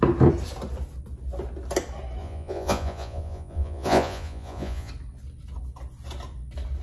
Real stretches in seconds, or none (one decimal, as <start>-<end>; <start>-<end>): 0.0-2.2; 4.9-6.8